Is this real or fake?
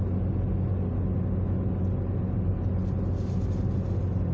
real